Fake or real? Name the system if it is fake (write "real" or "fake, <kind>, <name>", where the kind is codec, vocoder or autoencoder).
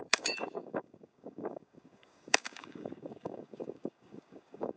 fake, codec, DAC